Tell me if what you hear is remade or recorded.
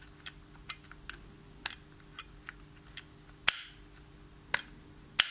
recorded